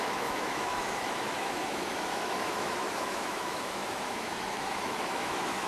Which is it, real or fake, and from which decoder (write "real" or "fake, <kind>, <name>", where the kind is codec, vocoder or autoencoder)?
fake, autoencoder, DAC-VAE